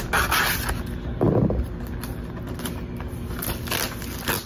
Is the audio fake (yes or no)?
no